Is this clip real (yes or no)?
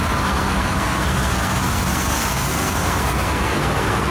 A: no